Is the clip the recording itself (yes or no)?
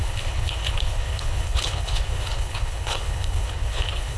no